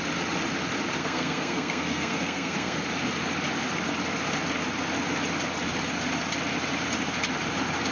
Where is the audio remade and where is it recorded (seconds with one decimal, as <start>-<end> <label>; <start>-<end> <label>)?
0.0-1.0 recorded; 1.0-2.8 remade; 2.8-7.9 recorded